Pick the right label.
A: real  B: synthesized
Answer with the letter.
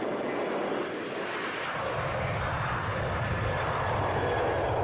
A